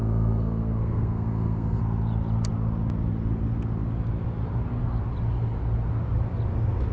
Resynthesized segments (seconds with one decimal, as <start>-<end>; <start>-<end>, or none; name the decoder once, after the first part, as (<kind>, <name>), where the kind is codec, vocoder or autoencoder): 0.0-1.8 (codec, SNAC)

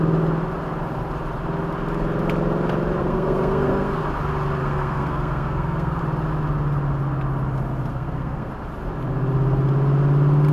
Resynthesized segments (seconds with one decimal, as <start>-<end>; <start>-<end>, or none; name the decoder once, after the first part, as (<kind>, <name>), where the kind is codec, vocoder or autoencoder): 3.0-4.0 (codec, SNAC); 4.6-6.0; 7.9-8.5

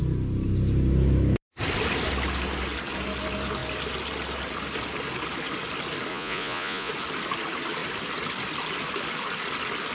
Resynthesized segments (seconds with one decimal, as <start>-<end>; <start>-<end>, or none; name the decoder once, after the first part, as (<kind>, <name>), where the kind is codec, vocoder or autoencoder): 6.1-6.9 (vocoder, Vocos)